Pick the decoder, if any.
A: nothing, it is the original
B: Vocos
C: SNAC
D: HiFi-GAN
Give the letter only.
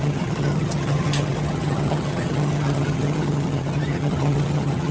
D